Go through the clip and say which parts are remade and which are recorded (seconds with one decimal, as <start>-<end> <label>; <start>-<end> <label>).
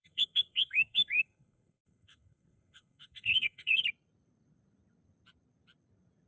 0.0-3.8 remade; 3.8-6.3 recorded